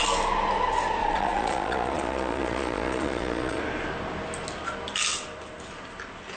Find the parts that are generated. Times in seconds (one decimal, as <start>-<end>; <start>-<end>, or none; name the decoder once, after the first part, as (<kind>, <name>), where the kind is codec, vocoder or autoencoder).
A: 1.0-3.6 (vocoder, Vocos)